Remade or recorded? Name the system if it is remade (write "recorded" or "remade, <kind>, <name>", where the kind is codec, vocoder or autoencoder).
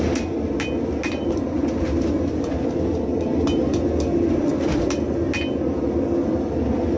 recorded